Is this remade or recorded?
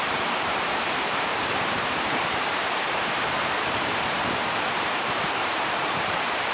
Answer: remade